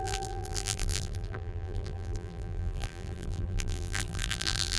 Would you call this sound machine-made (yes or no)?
yes